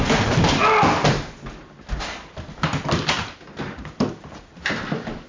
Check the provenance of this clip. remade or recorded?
recorded